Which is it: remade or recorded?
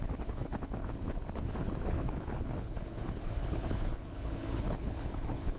remade